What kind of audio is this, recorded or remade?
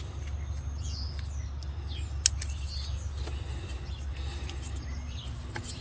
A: recorded